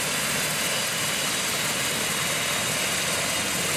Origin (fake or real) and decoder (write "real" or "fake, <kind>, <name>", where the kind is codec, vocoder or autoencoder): real